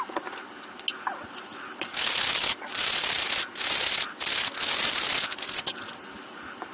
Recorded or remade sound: recorded